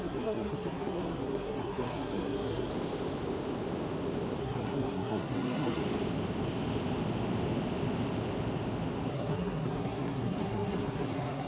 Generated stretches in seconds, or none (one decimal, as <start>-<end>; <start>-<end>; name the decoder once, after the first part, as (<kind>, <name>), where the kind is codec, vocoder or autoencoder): 0.0-2.7 (codec, SNAC); 4.4-5.8; 9.1-11.5